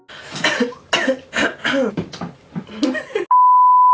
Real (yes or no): yes